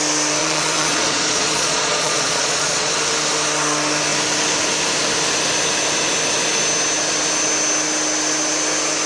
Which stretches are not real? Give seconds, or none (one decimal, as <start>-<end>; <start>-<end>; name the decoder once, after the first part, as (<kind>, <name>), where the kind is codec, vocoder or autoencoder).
0.4-2.9 (vocoder, Vocos)

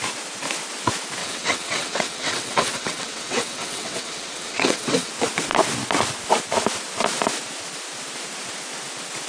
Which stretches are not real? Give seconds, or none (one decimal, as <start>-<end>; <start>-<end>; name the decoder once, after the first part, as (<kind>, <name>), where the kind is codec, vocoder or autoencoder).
1.2-5.1 (vocoder, WaveNeXt)

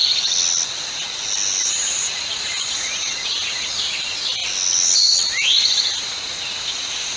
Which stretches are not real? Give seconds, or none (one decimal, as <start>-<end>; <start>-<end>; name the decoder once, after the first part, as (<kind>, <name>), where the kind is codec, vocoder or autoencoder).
1.6-4.4 (vocoder, Vocos); 5.5-7.2

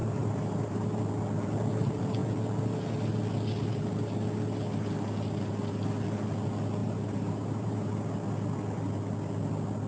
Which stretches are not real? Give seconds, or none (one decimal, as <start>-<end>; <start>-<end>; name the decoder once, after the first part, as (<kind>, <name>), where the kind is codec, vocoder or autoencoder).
0.0-1.1 (vocoder, BigVGAN v2); 6.8-7.9